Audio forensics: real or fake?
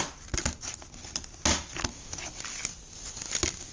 real